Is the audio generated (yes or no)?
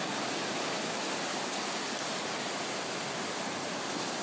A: no